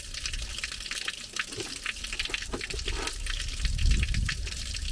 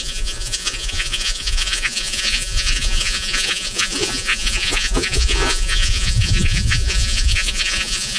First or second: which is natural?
first